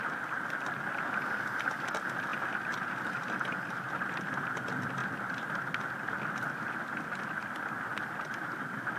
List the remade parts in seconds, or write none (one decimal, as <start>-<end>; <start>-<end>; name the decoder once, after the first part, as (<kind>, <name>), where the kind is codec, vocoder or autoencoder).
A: none